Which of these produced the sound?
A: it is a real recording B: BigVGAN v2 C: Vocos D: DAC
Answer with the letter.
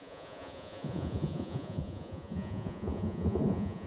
C